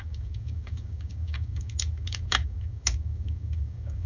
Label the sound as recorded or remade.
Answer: remade